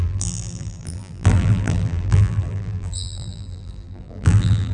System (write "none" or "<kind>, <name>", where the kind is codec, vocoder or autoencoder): vocoder, BigVGAN v2